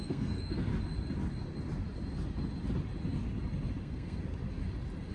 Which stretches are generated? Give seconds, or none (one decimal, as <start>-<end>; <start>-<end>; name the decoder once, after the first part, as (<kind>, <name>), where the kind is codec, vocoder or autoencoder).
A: 0.0-0.7 (codec, SNAC); 3.8-4.2